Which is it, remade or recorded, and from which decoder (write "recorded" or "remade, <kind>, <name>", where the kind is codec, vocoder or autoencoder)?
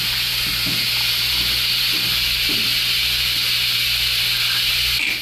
recorded